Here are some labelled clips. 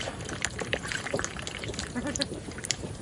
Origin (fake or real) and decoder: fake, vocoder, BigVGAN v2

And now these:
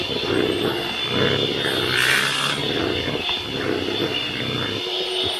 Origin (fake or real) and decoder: real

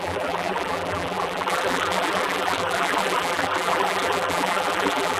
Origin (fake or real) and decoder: fake, vocoder, BigVGAN v2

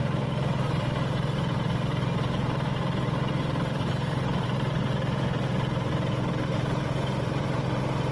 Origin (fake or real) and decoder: fake, vocoder, BigVGAN v2